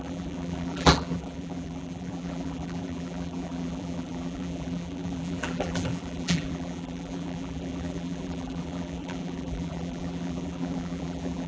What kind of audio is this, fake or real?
fake